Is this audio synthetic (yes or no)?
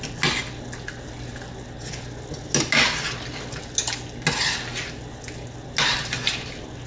no